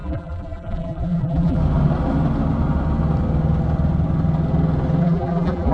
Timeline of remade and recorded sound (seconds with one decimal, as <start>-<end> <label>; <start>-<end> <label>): 0.0-1.6 remade; 1.6-5.0 recorded; 5.0-5.7 remade